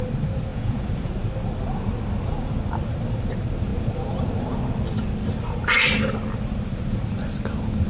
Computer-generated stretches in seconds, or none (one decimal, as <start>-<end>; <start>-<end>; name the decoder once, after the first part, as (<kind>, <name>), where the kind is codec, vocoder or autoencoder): 0.5-1.1 (vocoder, Vocos)